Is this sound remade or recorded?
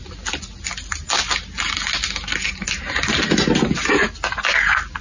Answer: recorded